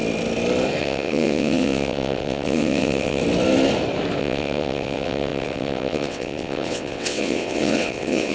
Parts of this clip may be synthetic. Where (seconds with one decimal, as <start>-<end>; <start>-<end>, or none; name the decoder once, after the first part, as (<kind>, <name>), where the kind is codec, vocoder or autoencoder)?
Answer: 0.8-3.2 (vocoder, WaveNeXt); 4.2-8.3